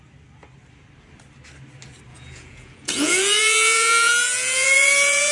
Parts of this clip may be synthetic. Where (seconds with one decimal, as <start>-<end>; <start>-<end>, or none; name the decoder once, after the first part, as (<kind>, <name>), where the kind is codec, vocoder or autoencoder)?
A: 2.1-5.3 (vocoder, Vocos)